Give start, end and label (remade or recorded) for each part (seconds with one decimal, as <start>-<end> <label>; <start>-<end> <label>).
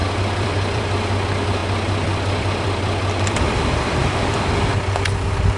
0.0-0.8 remade; 0.8-1.6 recorded; 1.6-4.1 remade; 4.1-5.6 recorded